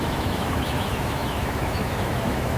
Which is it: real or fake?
fake